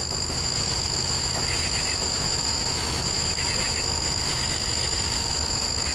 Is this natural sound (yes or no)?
no